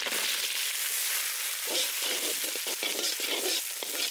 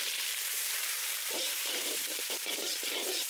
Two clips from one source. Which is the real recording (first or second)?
first